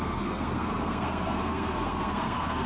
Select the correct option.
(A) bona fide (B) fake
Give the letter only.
B